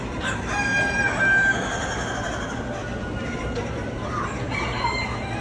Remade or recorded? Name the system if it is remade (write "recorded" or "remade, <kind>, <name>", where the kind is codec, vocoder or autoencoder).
recorded